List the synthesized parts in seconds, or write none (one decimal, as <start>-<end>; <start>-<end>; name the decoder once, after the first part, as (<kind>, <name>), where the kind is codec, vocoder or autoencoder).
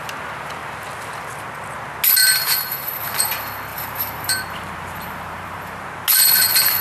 2.2-3.0 (vocoder, BigVGAN v2); 3.7-5.8